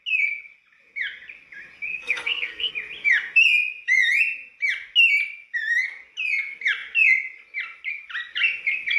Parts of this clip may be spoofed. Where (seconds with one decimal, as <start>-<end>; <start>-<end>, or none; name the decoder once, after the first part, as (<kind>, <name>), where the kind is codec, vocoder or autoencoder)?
1.9-2.7 (codec, SNAC)

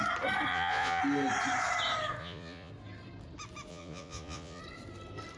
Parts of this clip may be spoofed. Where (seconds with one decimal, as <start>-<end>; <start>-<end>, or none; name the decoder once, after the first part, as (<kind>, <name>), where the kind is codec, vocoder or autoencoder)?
0.5-1.0 (vocoder, Vocos); 2.2-2.7; 3.7-4.6

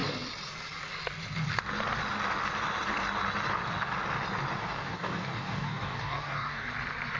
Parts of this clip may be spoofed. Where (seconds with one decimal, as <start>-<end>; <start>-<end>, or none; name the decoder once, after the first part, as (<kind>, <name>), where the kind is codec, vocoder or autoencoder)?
4.6-6.7 (codec, DAC)

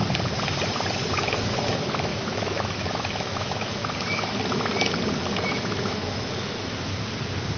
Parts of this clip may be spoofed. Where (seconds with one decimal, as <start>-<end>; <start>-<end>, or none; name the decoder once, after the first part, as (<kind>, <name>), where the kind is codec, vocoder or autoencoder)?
1.1-3.8 (autoencoder, DAC-VAE); 5.5-6.9

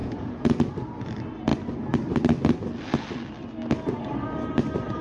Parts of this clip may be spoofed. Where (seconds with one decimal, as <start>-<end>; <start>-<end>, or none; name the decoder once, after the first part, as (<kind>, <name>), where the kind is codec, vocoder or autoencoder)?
0.0-0.6 (vocoder, Vocos)

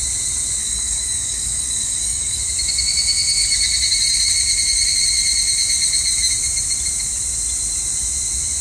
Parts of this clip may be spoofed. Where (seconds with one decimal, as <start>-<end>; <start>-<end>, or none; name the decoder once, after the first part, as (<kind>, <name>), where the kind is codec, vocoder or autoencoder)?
0.6-2.4 (codec, DAC)

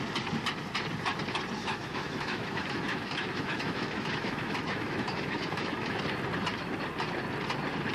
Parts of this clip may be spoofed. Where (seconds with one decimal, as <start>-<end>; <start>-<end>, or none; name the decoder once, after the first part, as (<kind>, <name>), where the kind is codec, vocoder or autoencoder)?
1.6-6.0 (autoencoder, DAC-VAE)

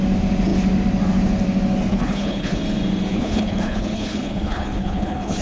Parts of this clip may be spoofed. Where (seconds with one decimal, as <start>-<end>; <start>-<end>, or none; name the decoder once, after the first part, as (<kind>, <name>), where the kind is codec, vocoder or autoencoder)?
1.9-2.6 (codec, HILCodec); 3.1-5.4